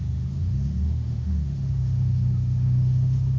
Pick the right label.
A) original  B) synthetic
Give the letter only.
B